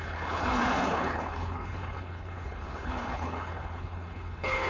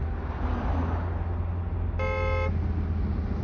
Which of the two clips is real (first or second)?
second